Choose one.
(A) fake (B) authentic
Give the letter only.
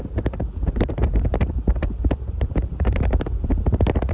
A